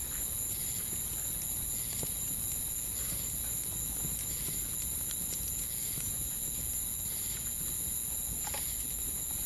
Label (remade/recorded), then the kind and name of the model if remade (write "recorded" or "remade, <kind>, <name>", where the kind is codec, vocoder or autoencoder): recorded